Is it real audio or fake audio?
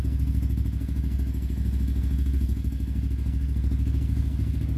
fake